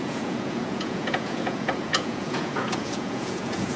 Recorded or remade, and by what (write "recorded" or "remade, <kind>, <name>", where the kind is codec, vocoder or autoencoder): remade, vocoder, Vocos